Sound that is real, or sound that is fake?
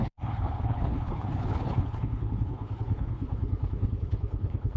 fake